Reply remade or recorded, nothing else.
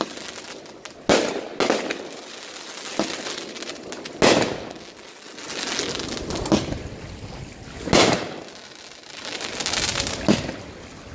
recorded